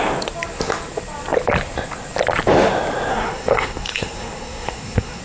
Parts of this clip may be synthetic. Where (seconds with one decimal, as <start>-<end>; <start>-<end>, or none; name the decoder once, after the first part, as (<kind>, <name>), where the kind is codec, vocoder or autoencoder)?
3.1-5.2 (codec, SNAC)